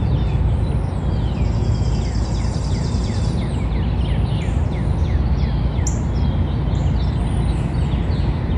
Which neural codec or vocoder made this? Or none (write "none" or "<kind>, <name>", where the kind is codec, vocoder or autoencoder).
none